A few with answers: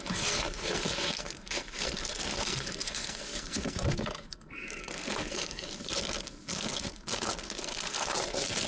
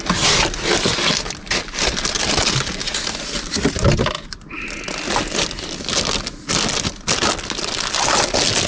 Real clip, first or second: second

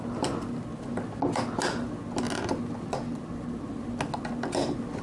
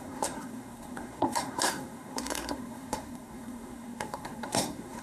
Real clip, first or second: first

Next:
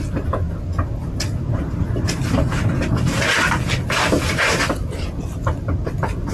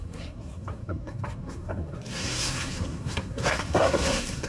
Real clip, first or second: first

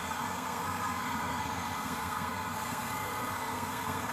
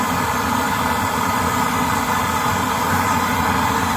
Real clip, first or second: second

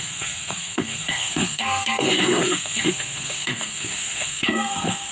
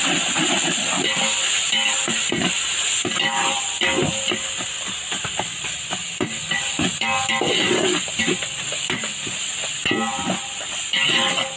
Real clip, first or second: second